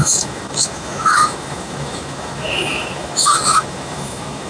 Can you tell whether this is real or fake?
fake